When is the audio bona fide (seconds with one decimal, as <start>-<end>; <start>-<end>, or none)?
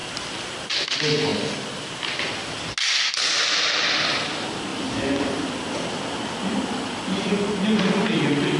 0.0-1.3; 2.2-4.7; 7.3-8.6